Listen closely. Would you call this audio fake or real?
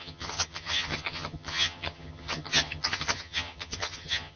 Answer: fake